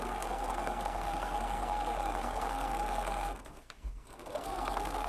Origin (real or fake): fake